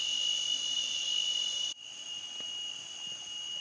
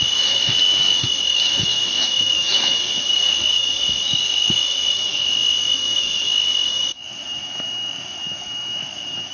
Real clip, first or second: first